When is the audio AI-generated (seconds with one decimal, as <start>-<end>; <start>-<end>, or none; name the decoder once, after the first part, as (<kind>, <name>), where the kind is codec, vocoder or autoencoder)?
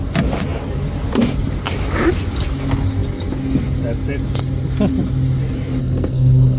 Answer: 5.8-6.6 (codec, SNAC)